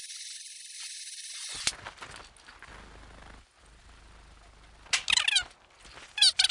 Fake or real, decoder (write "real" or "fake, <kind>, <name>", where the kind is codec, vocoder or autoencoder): real